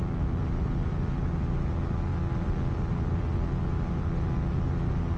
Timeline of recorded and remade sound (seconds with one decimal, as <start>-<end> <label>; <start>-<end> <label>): 0.0-5.2 recorded